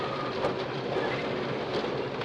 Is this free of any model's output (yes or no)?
yes